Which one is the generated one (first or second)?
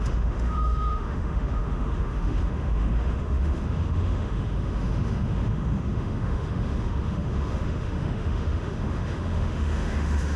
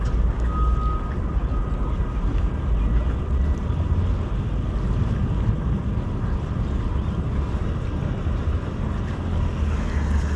first